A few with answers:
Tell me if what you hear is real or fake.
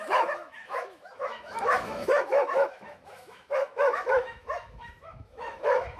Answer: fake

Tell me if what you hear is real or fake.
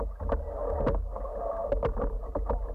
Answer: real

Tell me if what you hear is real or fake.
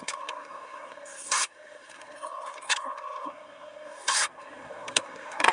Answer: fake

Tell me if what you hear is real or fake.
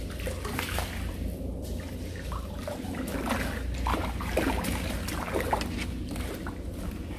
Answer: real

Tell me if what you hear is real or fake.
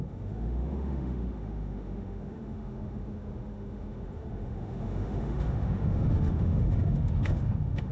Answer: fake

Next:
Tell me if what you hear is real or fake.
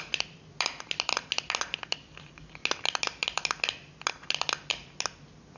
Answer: real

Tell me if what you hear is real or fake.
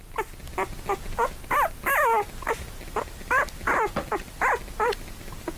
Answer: real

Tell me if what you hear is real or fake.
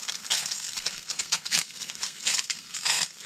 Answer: fake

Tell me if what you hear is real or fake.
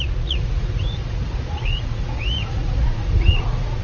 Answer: fake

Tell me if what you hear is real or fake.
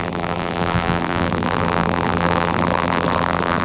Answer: fake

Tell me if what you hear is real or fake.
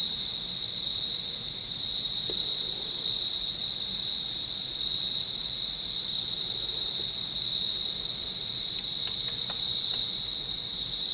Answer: real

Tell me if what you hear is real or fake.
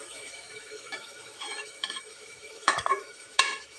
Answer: fake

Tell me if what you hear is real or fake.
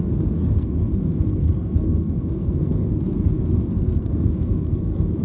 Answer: fake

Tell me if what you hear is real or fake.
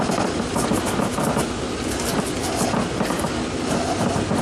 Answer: real